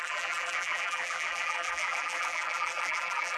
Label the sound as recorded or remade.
remade